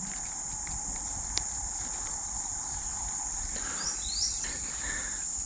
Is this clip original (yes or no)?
yes